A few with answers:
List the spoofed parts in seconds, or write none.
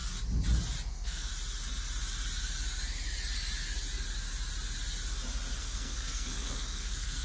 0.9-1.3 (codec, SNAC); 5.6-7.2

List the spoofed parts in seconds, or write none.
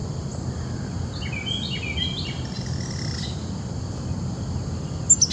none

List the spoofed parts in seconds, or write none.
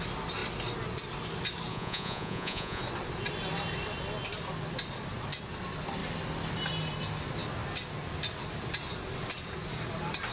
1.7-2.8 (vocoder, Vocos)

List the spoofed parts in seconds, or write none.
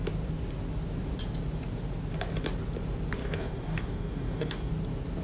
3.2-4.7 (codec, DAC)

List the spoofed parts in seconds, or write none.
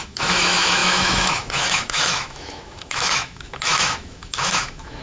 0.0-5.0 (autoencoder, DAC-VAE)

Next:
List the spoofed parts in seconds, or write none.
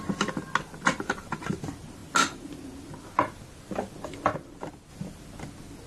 none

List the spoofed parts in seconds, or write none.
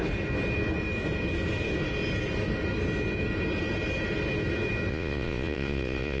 4.9-6.2 (vocoder, Vocos)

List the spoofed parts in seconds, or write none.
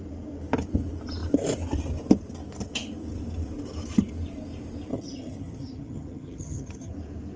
4.9-6.9 (vocoder, HiFi-GAN)